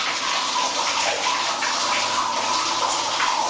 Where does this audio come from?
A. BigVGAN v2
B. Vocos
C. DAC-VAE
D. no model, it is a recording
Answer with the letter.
D